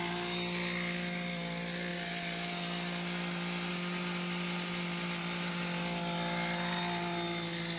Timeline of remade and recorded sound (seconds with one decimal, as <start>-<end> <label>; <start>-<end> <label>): 0.0-7.8 recorded